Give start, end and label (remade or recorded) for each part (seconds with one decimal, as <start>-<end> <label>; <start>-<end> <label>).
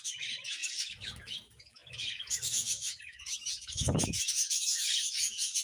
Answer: 0.0-5.6 remade